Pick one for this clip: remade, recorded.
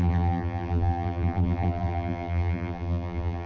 remade